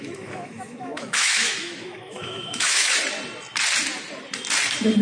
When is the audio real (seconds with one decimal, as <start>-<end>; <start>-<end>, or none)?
3.0-5.0